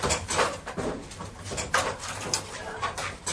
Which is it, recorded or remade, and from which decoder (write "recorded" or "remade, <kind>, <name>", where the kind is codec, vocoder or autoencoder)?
remade, vocoder, BigVGAN v2